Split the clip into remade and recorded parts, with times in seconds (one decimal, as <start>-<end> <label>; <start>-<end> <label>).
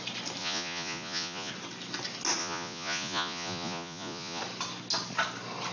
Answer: 0.0-0.4 recorded; 0.4-1.5 remade; 1.5-2.4 recorded; 2.4-4.4 remade; 4.4-5.7 recorded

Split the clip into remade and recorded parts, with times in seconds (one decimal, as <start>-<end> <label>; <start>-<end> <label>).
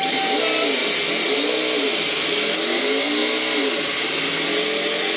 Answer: 0.0-5.2 recorded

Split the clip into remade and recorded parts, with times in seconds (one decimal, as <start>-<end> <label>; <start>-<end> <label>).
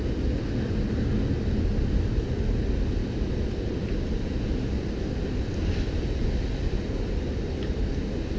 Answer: 0.0-8.4 recorded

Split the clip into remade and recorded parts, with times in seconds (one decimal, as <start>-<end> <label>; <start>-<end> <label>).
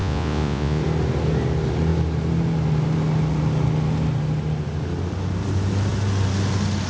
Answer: 0.0-0.8 remade; 0.8-6.9 recorded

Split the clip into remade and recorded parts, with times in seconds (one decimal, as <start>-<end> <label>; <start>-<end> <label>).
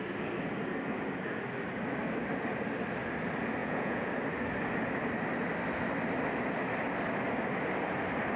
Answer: 0.0-3.6 recorded; 3.6-4.1 remade; 4.1-8.4 recorded